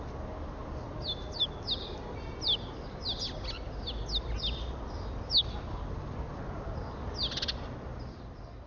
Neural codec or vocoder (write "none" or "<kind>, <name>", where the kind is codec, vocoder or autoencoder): none